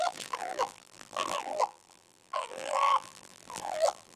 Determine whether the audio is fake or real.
fake